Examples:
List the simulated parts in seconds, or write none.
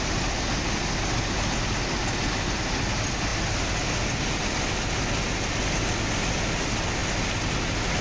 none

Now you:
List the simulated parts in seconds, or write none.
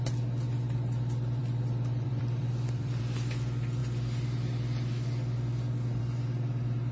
1.4-3.0 (vocoder, BigVGAN v2)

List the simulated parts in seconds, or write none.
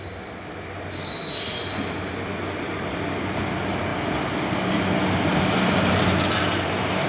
none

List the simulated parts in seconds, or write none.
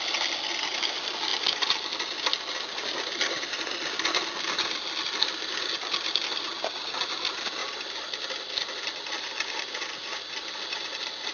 none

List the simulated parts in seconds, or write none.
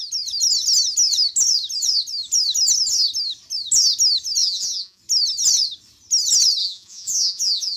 4.4-5.0 (vocoder, Vocos); 6.6-7.8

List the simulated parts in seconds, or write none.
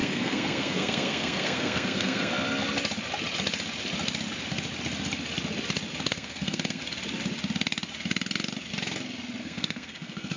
0.0-2.3 (codec, SNAC); 6.1-6.8; 9.4-10.4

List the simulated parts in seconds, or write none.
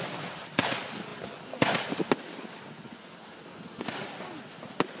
none